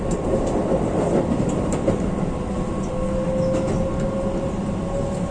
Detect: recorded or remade recorded